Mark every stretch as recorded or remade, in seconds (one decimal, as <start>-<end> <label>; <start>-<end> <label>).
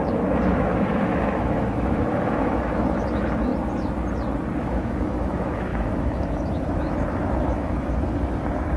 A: 0.0-3.5 remade; 3.5-4.6 recorded; 4.6-8.8 remade